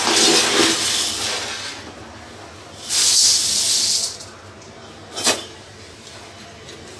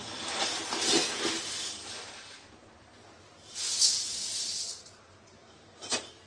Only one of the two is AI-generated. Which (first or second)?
second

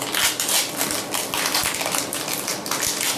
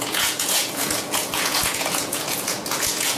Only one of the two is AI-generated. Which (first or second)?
second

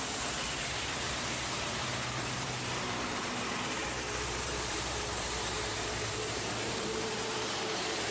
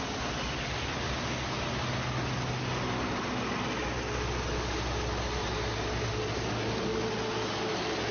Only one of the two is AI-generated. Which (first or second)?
first